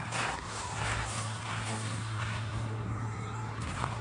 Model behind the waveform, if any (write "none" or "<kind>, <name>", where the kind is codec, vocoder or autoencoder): codec, SNAC